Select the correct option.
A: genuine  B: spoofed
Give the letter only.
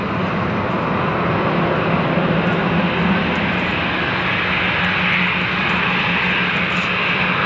A